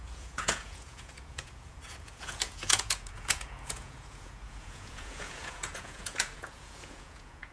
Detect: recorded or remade remade